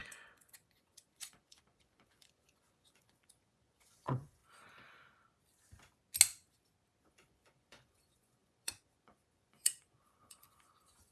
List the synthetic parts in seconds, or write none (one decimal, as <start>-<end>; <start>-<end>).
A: 0.0-4.4; 7.0-11.1